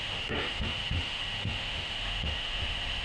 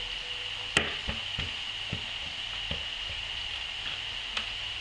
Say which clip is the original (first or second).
second